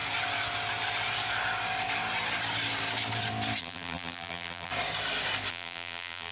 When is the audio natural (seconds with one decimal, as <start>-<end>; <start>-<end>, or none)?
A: 0.0-3.6; 4.7-5.5